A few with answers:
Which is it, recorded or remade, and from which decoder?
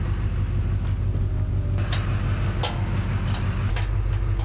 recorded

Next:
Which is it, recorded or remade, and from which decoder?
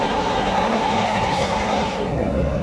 remade, codec, SNAC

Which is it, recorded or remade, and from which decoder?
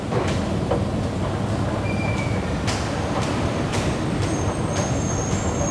remade, vocoder, BigVGAN v2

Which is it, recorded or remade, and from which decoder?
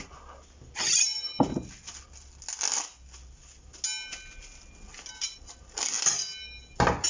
recorded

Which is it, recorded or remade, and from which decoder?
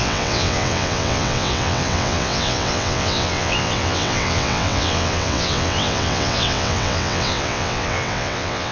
remade, vocoder, WaveNeXt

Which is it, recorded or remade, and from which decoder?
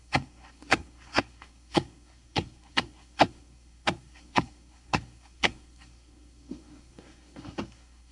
remade, codec, SNAC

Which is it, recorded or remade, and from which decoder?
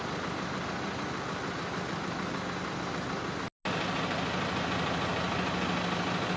recorded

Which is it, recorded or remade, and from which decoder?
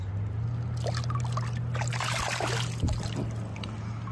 recorded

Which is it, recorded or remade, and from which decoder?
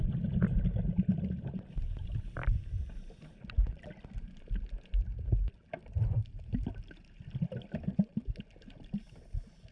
recorded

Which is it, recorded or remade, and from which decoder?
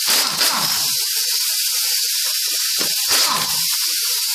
recorded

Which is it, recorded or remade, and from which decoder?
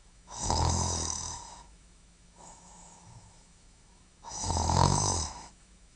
remade, autoencoder, DAC-VAE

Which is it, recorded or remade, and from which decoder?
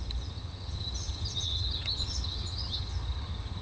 remade, vocoder, HiFi-GAN